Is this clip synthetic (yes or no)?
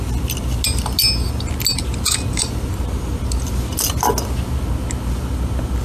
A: no